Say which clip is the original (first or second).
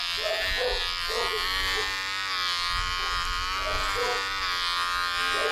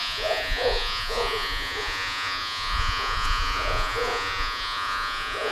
first